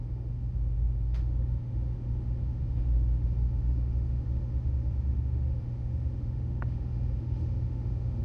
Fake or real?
fake